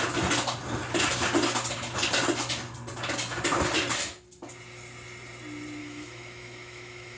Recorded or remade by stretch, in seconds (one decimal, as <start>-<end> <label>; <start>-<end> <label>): 0.0-5.8 recorded; 5.8-7.2 remade